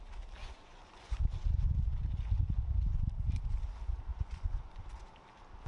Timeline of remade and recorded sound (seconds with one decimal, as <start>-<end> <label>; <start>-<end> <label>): 0.0-0.4 recorded; 0.4-1.2 remade; 1.2-4.1 recorded; 4.1-4.8 remade; 4.8-5.7 recorded